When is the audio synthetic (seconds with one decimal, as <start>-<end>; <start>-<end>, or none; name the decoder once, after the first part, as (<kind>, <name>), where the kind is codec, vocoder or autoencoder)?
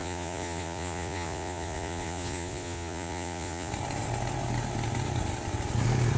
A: 0.0-3.7 (vocoder, Vocos)